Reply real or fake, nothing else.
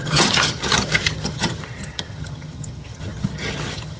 fake